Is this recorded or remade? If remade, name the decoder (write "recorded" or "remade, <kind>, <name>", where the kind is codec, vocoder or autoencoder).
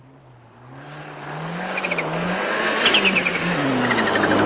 recorded